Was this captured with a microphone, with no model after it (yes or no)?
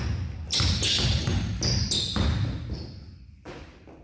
yes